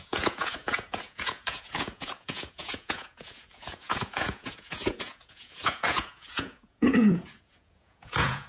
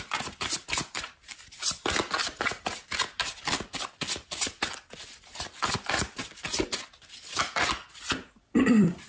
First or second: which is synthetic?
first